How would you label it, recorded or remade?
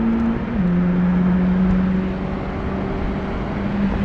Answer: recorded